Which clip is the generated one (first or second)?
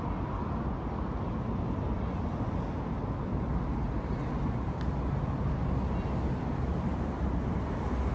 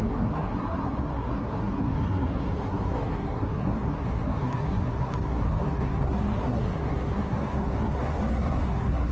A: second